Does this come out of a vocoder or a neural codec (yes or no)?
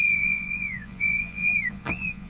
yes